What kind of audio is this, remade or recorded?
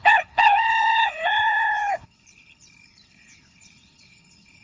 remade